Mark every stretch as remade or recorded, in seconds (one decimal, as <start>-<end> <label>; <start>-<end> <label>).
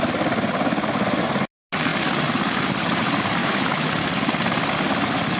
0.0-3.4 recorded; 3.4-3.9 remade; 3.9-5.4 recorded